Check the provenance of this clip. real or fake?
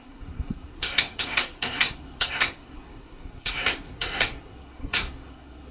fake